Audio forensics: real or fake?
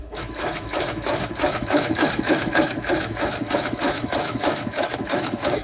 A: fake